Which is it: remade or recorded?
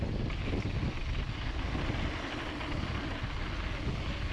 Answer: recorded